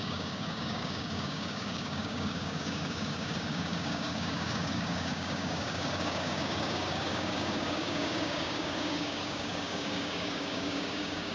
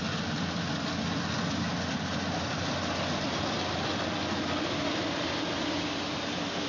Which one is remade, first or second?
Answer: first